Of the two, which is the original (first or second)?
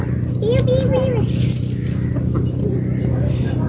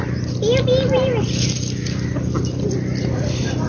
first